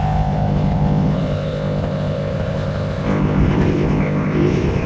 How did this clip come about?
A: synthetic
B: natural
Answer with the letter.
A